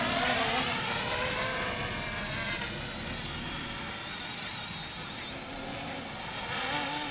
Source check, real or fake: real